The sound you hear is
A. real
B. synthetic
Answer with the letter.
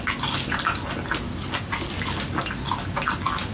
A